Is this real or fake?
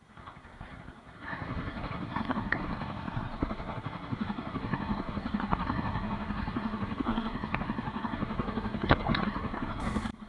fake